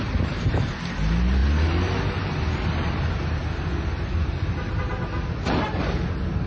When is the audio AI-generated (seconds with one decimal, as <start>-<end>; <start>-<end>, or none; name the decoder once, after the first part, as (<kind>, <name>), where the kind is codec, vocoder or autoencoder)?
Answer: none